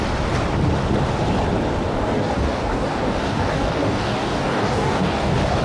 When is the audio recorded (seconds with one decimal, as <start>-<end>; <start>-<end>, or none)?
0.0-1.9